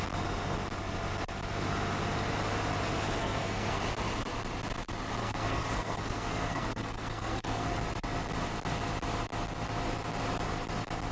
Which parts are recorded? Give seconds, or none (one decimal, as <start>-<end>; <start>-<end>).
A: 0.0-3.2; 3.8-5.2; 7.8-11.1